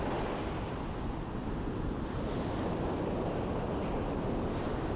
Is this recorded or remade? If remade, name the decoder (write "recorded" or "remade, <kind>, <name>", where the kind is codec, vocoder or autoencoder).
recorded